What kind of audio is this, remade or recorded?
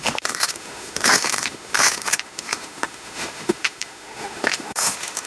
remade